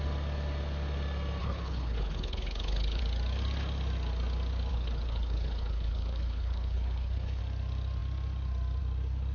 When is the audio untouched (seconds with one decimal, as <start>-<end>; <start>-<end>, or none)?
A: 0.0-1.4; 3.0-4.7; 7.4-9.3